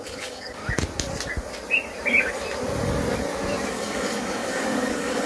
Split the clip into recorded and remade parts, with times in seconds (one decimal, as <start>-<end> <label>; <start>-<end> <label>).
0.0-0.6 remade; 0.6-3.7 recorded; 3.7-5.3 remade